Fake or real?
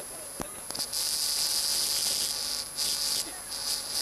real